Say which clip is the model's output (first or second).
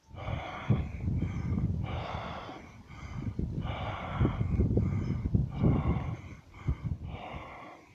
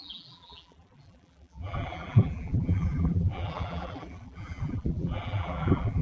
second